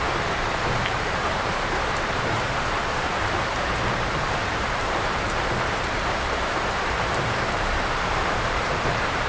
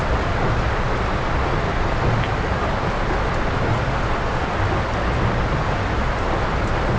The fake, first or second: first